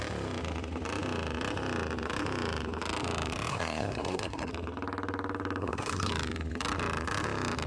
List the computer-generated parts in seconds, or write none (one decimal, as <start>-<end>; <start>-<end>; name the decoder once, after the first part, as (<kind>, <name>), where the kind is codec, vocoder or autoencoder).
3.5-4.5 (codec, SNAC); 5.6-6.1